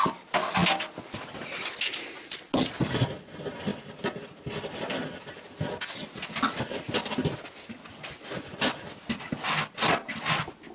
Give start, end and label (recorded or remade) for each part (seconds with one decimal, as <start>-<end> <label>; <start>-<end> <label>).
0.0-10.7 recorded